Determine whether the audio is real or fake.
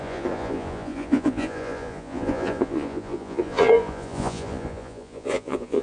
fake